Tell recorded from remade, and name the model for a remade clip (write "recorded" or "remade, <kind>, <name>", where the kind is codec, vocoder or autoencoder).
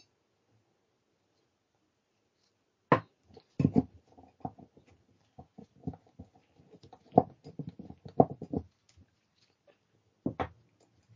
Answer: recorded